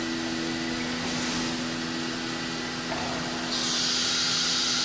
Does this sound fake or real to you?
real